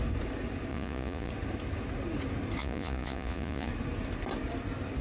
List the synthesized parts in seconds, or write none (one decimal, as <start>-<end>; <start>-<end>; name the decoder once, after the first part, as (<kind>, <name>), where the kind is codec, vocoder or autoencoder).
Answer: 0.7-1.3 (vocoder, Vocos); 2.6-3.7